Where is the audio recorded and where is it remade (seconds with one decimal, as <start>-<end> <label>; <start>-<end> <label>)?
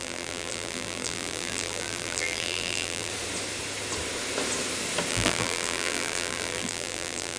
0.0-3.1 remade; 3.1-5.1 recorded; 5.1-7.4 remade